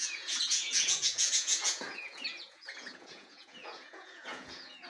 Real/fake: fake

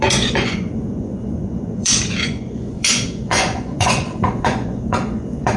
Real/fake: fake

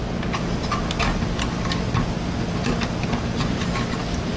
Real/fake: real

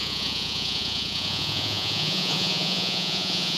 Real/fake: fake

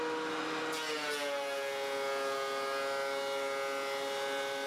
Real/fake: real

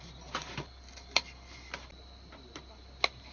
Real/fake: real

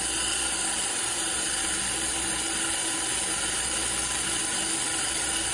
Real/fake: real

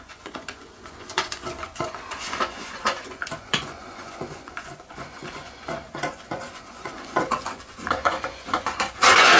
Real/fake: fake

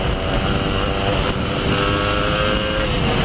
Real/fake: real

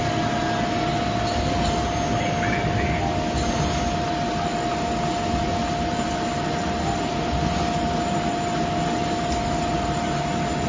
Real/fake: real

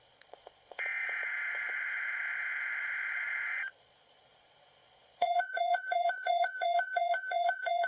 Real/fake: fake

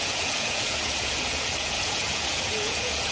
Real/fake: fake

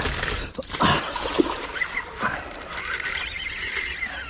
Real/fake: real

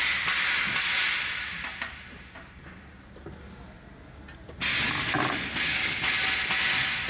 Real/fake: real